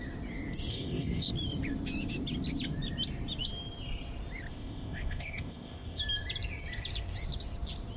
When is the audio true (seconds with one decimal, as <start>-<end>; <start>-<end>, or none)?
0.0-0.7; 1.3-4.5; 6.0-8.0